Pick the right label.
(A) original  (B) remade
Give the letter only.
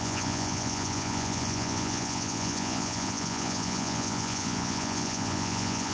B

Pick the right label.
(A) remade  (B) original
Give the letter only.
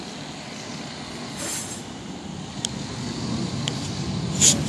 B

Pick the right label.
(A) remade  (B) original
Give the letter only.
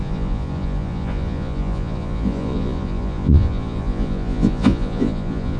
A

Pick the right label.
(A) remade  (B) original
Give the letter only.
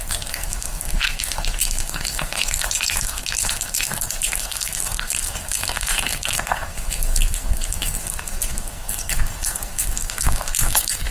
A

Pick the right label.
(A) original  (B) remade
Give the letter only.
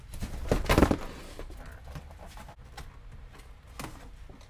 A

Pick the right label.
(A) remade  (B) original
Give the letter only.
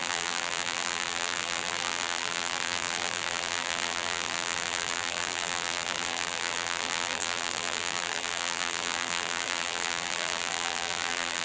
A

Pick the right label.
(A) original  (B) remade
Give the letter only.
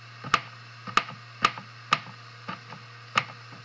A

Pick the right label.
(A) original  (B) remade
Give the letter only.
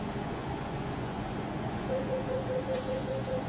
B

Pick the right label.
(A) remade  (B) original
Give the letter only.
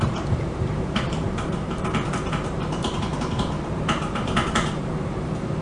A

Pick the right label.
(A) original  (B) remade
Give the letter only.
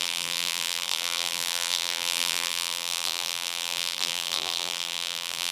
B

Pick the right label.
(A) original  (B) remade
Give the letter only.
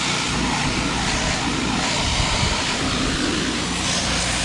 A